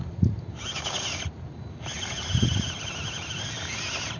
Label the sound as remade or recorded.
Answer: recorded